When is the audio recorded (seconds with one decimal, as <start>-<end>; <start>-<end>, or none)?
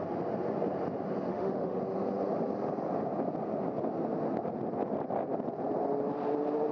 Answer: 0.0-1.3; 1.8-6.7